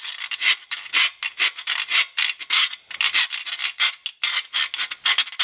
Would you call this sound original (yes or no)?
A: yes